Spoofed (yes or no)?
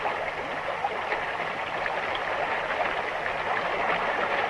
no